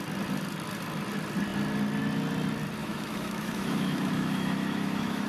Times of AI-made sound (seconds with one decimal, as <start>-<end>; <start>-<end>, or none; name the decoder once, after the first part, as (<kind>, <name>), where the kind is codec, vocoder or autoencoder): 2.8-5.3 (autoencoder, DAC-VAE)